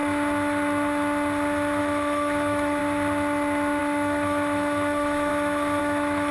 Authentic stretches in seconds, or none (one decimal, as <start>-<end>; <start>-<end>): 0.0-1.8; 2.8-3.8; 5.3-5.8